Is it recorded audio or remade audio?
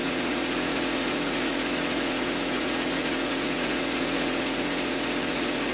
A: remade